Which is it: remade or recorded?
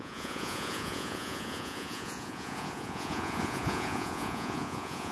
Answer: remade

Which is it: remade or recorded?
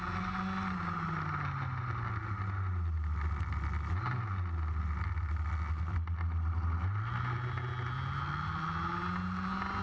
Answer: recorded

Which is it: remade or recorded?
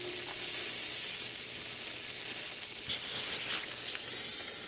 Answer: recorded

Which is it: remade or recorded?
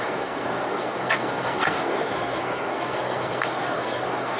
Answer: remade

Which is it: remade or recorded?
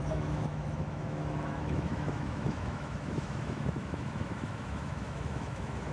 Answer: remade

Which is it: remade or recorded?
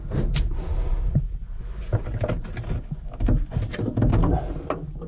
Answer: recorded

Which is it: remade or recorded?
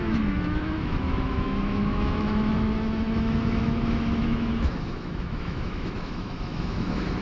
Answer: remade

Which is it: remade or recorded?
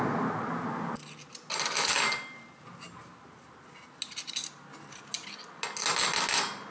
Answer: recorded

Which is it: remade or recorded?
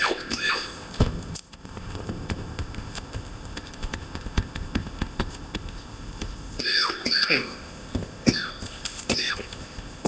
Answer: remade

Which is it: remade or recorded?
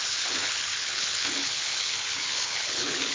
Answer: remade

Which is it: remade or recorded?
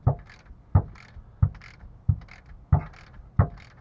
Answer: recorded